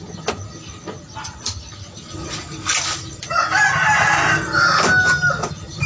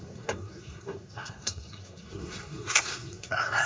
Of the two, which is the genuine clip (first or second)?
first